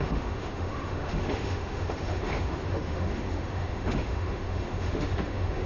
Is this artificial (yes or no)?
yes